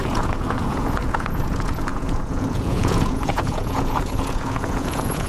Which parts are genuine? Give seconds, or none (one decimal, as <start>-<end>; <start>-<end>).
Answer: none